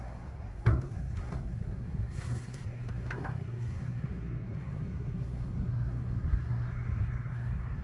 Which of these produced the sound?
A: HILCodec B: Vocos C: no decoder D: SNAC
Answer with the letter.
D